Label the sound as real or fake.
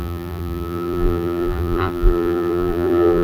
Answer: fake